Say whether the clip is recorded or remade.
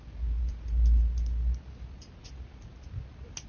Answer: recorded